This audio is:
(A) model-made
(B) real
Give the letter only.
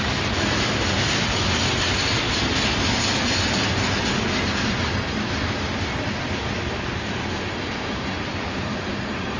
B